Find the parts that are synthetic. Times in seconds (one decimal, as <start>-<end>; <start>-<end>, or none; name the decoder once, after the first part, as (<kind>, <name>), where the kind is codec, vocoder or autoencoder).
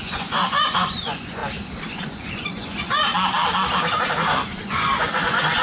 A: 0.0-1.4 (vocoder, Vocos); 1.9-3.1; 4.6-5.6